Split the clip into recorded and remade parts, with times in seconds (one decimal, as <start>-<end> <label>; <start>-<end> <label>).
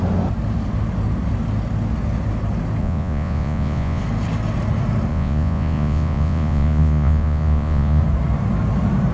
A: 0.0-2.8 recorded; 2.8-4.0 remade; 4.0-5.1 recorded; 5.1-8.0 remade; 8.0-9.1 recorded